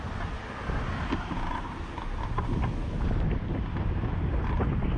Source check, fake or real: real